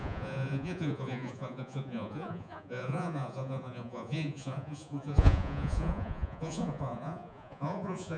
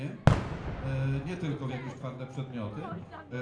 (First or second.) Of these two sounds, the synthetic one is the first